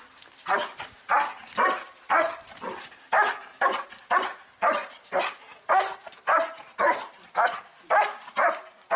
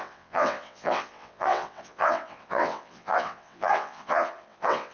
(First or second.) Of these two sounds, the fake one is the second